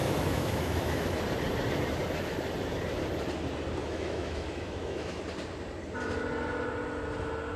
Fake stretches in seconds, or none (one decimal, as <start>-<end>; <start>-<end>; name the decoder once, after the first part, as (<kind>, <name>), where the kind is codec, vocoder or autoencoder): 0.0-1.2 (autoencoder, DAC-VAE); 3.8-5.2

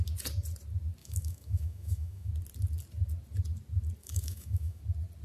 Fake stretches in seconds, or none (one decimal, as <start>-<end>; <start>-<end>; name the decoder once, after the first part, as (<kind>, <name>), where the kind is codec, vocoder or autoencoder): 1.0-2.3 (autoencoder, DAC-VAE); 4.0-4.8

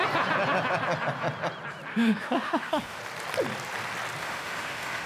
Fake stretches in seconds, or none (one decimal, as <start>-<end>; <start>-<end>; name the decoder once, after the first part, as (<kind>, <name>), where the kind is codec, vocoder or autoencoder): 1.9-3.0 (autoencoder, DAC-VAE); 4.2-5.1

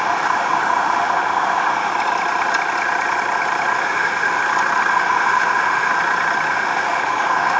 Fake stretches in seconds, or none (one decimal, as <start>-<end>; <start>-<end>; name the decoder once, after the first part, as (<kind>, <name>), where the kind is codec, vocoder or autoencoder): 0.0-1.9 (autoencoder, DAC-VAE); 3.8-4.4; 4.9-5.9; 6.5-7.6

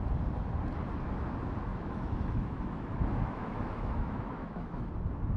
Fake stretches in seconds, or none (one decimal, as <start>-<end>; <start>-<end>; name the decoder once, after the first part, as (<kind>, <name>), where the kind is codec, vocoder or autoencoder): 1.7-4.9 (autoencoder, DAC-VAE)

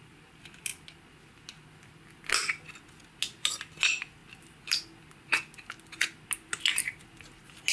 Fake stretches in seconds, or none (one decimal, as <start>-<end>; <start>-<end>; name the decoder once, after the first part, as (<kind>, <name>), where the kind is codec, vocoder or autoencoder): none

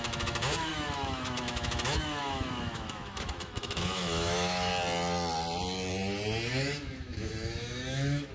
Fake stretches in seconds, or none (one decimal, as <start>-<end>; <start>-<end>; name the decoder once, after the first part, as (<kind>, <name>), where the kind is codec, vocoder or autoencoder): 0.0-4.7 (autoencoder, DAC-VAE); 6.5-8.3

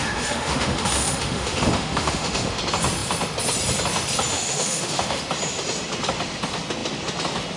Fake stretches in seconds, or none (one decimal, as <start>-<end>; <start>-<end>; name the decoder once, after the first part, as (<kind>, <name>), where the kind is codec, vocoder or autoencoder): 0.0-2.6 (autoencoder, DAC-VAE); 4.3-5.2